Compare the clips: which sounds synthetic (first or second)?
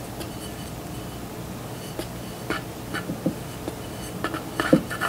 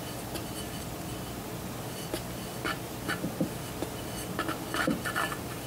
second